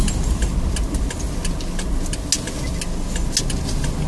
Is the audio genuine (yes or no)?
yes